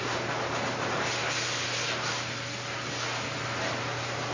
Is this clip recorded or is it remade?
recorded